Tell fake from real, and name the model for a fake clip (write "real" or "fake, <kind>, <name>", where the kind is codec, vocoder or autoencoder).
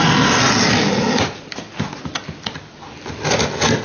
real